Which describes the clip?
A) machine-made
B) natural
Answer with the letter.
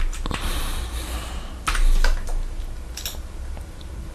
B